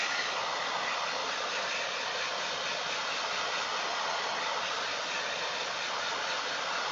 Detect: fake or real real